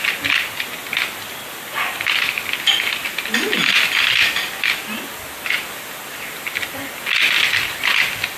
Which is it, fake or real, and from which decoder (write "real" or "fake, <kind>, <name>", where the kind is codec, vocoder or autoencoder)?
real